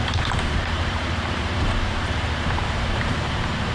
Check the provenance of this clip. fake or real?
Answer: fake